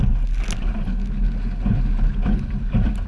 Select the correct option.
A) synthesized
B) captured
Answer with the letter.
B